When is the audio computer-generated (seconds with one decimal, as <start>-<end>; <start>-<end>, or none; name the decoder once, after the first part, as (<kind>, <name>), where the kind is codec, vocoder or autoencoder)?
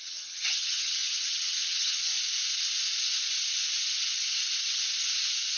0.0-2.1 (vocoder, HiFi-GAN)